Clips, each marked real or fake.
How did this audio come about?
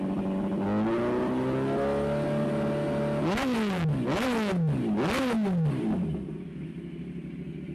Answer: real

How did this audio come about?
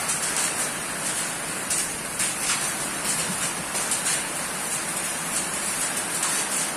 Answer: fake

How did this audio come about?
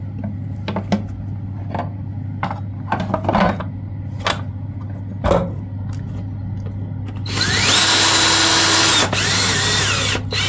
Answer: real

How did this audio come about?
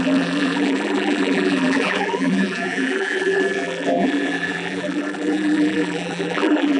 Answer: fake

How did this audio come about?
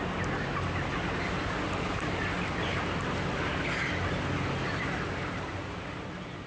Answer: real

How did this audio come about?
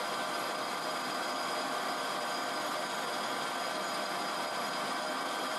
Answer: fake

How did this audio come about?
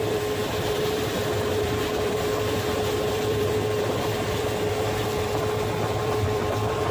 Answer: fake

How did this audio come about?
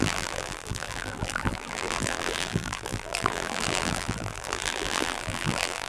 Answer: fake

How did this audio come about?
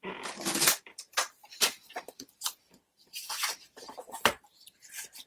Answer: fake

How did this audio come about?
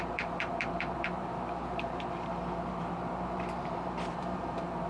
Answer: fake